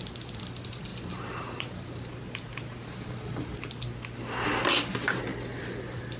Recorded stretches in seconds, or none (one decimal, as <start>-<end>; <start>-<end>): 0.0-0.9; 3.1-6.2